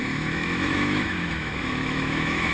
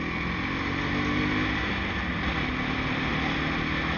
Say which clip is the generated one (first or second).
first